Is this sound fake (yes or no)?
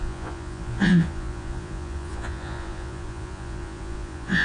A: yes